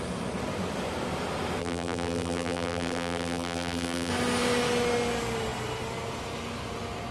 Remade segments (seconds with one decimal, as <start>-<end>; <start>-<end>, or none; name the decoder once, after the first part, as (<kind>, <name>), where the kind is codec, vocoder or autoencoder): 1.6-4.1 (vocoder, BigVGAN v2)

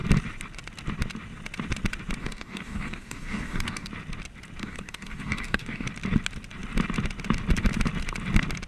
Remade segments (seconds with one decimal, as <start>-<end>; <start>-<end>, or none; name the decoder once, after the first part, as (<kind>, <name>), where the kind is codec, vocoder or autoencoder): 2.2-3.9 (codec, DAC); 4.6-5.9

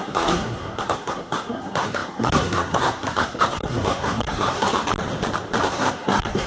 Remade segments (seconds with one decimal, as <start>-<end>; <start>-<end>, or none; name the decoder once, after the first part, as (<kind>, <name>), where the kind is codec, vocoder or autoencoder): 0.0-4.9 (codec, SNAC); 5.6-6.5

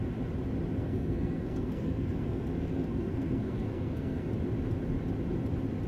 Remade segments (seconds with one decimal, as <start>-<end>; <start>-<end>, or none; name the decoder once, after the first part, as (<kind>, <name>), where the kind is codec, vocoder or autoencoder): 0.8-4.3 (codec, SNAC)

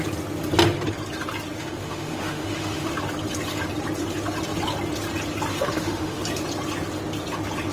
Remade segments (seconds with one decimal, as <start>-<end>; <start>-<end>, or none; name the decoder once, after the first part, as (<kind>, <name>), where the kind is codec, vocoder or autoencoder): 1.6-2.9 (autoencoder, DAC-VAE); 5.5-6.2

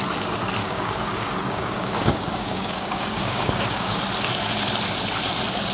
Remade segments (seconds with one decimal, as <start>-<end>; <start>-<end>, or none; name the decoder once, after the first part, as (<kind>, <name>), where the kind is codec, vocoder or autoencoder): 0.6-4.0 (codec, DAC)